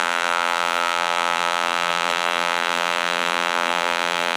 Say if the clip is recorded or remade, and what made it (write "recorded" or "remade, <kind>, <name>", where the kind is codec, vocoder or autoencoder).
remade, vocoder, BigVGAN v2